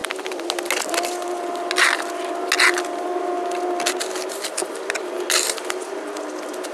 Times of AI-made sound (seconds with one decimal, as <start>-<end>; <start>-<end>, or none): none